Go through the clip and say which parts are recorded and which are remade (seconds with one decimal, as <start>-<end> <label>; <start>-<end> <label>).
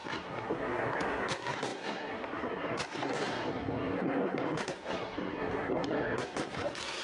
0.0-7.0 remade